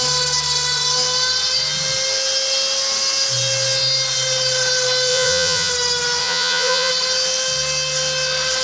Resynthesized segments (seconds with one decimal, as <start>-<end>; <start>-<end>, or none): 5.1-5.7; 6.2-6.9